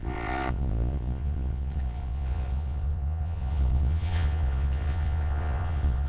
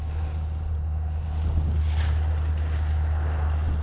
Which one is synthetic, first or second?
first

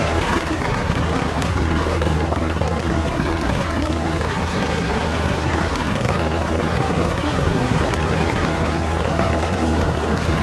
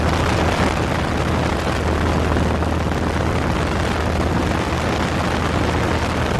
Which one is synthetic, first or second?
first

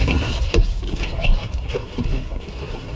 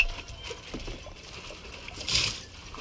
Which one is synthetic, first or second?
first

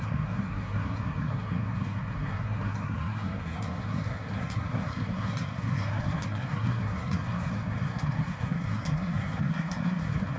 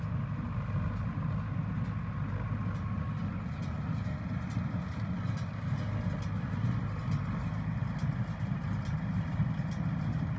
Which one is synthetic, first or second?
first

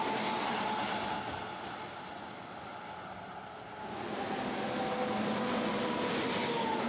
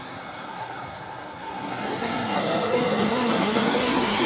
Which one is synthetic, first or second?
second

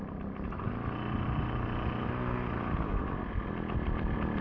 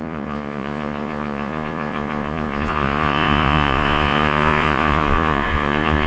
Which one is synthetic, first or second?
second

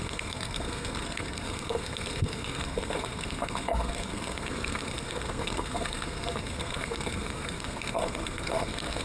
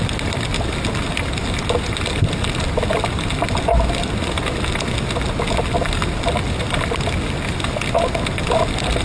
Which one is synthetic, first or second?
first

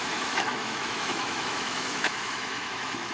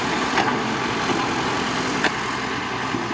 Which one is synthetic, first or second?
first